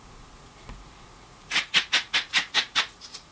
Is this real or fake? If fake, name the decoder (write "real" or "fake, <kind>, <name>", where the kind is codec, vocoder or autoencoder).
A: fake, vocoder, Vocos